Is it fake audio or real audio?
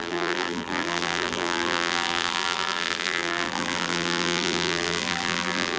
fake